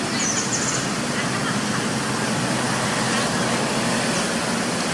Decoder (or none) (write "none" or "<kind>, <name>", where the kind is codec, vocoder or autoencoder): none